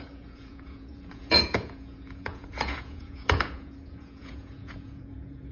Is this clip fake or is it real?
fake